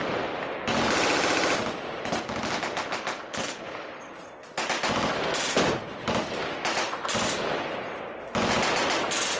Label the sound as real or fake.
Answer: real